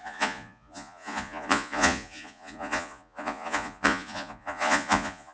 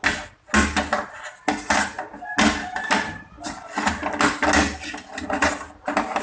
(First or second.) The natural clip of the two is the second